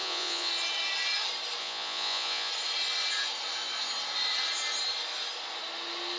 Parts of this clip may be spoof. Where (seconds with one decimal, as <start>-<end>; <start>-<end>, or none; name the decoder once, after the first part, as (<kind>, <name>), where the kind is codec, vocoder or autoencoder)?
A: 0.0-0.5 (vocoder, Vocos); 1.6-2.5